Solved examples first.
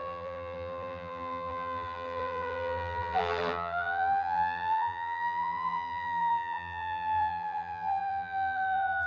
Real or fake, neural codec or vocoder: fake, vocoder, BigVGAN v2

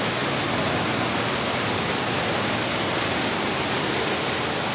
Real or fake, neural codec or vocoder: real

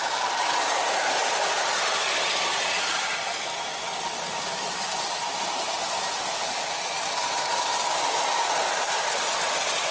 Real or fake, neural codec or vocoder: fake, vocoder, BigVGAN v2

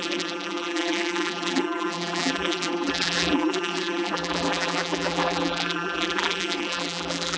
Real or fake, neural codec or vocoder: fake, vocoder, BigVGAN v2